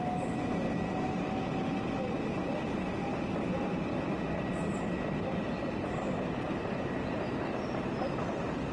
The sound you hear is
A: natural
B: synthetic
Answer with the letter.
A